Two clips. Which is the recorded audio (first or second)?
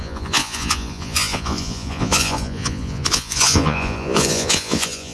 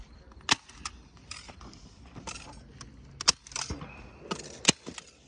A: second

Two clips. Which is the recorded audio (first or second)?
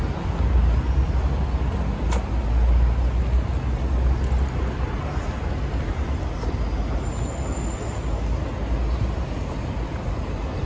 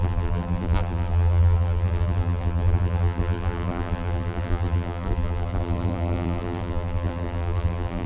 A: first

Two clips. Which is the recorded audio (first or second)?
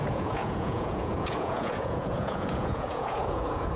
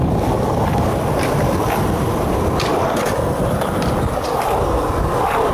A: second